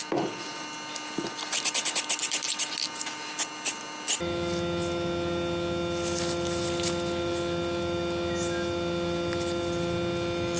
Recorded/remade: recorded